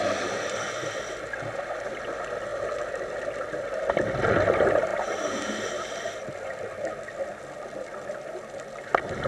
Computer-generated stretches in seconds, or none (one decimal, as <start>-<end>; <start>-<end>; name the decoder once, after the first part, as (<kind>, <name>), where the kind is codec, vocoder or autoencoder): none

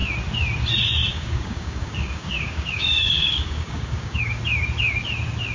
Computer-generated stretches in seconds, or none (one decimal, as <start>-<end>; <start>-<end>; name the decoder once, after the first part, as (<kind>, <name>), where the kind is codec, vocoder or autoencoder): 1.1-4.4 (codec, DAC)

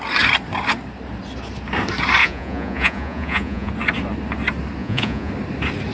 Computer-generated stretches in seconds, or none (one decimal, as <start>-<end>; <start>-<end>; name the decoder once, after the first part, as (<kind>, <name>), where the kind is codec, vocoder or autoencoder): 2.2-3.7 (vocoder, Vocos); 4.8-5.3

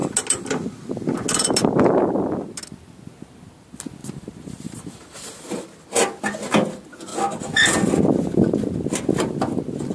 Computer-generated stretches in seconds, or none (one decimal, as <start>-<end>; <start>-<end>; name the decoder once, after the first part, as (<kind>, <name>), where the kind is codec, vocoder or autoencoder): 4.0-5.6 (vocoder, BigVGAN v2)